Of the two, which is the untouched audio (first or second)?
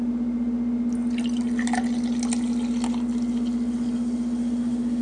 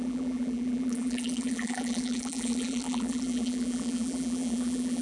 first